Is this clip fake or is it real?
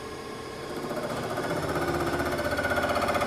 fake